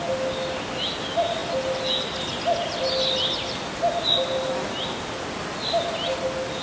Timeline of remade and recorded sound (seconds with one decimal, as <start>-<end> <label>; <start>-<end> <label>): 0.0-6.6 recorded